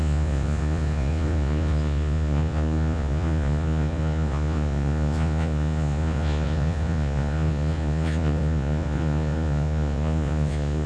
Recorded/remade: remade